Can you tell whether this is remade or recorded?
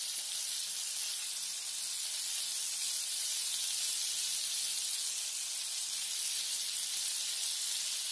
recorded